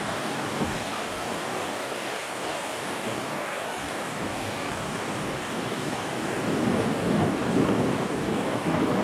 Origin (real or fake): fake